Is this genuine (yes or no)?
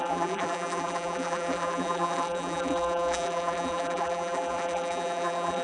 no